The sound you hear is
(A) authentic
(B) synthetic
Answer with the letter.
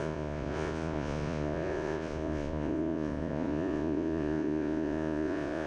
B